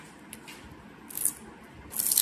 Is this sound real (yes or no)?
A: yes